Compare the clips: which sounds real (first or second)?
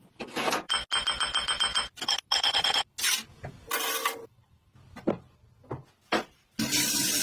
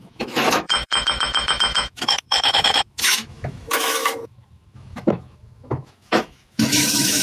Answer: first